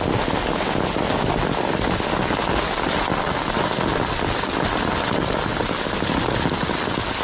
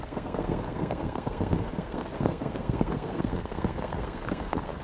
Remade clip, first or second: second